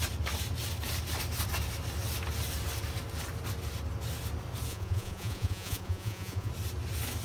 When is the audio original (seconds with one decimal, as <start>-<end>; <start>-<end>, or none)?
0.0-4.7; 6.5-7.2